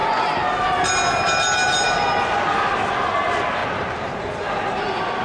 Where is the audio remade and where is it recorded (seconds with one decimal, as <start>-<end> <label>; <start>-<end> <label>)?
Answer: 0.0-5.2 recorded